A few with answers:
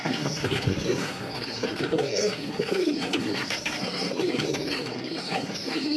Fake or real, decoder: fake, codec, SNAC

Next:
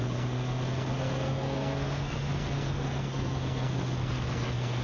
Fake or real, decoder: fake, codec, SNAC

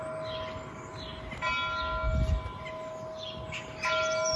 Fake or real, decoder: real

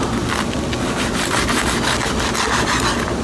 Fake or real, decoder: real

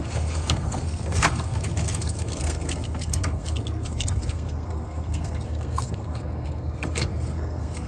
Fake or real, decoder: fake, codec, SNAC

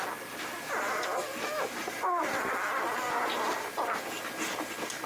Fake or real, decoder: real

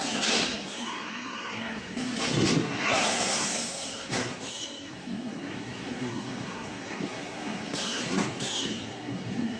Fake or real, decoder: fake, codec, SNAC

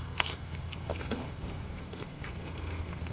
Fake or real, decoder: fake, codec, SNAC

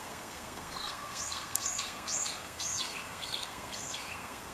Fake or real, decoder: fake, codec, SNAC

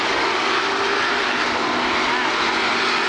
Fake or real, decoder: real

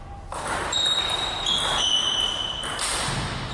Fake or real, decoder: real